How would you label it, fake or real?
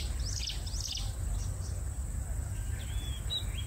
real